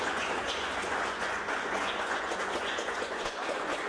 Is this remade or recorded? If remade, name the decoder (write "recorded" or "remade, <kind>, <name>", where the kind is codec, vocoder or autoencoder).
remade, vocoder, Vocos